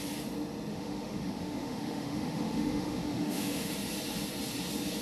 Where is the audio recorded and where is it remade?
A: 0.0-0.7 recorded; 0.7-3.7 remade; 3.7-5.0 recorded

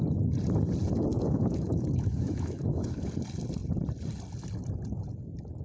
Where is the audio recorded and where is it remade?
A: 0.0-1.1 recorded; 1.1-3.1 remade; 3.1-5.6 recorded

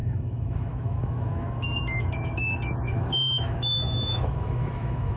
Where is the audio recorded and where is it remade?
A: 0.0-5.2 remade

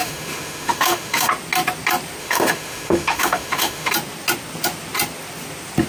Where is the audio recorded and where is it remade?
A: 0.0-1.3 remade; 1.3-2.2 recorded; 2.2-3.9 remade; 3.9-5.9 recorded

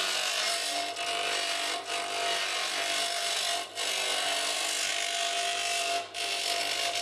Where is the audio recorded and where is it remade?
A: 0.0-7.0 recorded

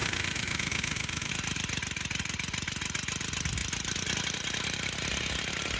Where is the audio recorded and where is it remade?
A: 0.0-1.3 remade; 1.3-5.8 recorded

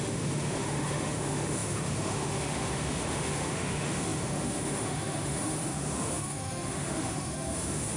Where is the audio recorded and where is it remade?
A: 0.0-8.0 remade

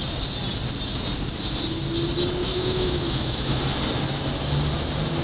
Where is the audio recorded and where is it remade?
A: 0.0-2.5 recorded; 2.5-3.6 remade; 3.6-5.2 recorded